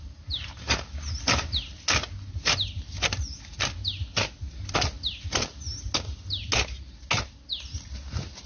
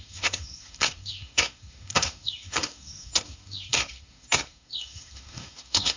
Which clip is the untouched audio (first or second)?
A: first